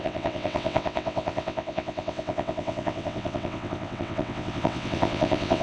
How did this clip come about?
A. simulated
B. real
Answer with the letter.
A